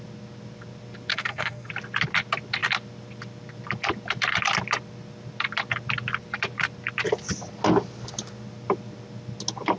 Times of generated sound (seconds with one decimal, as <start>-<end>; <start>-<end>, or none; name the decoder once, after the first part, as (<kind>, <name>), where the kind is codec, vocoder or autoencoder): 1.1-1.7 (codec, SNAC)

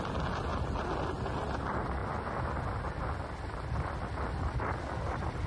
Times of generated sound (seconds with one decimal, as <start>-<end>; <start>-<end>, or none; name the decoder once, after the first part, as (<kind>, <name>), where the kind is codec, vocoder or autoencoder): none

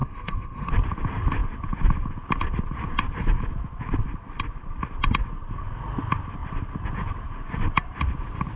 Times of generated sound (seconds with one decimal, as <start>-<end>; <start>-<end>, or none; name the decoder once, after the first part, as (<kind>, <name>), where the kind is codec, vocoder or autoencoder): 0.0-0.7 (codec, SNAC)